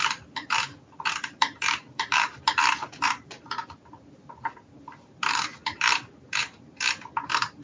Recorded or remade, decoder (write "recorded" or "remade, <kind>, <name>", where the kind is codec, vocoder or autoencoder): remade, vocoder, BigVGAN v2